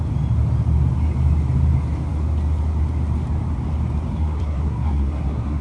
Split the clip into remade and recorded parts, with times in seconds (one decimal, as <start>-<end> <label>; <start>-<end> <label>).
0.0-4.1 recorded; 4.1-5.6 remade